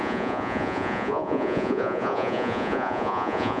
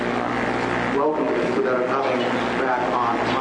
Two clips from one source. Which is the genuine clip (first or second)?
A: second